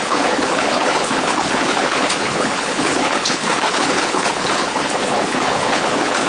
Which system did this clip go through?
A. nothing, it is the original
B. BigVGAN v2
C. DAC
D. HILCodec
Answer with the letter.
D